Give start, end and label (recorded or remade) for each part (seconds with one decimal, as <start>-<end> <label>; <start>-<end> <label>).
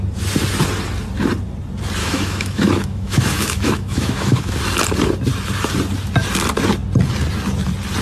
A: 0.0-2.0 recorded; 2.0-4.6 remade; 4.6-8.0 recorded